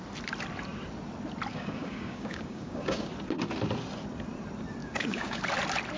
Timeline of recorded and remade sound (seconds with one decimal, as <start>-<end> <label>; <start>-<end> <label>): 0.0-1.5 recorded; 1.5-3.1 remade; 3.1-4.8 recorded; 4.8-5.4 remade; 5.4-6.0 recorded